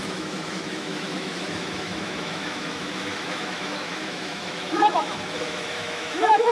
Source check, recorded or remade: remade